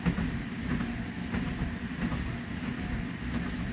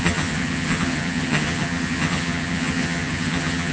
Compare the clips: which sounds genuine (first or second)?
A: first